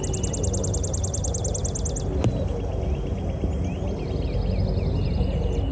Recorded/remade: recorded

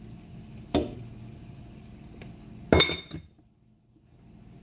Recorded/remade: recorded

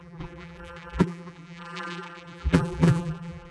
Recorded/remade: remade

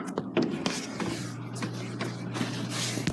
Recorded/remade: recorded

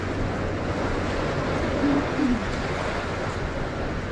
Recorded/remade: remade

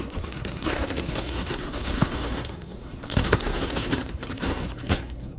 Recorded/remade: remade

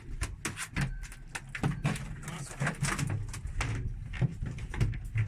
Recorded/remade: recorded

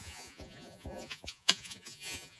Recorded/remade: remade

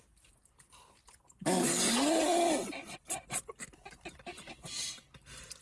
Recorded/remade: recorded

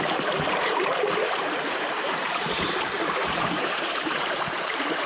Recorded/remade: remade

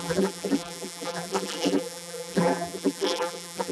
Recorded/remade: remade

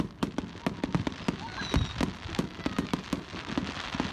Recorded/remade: recorded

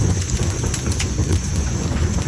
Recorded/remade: remade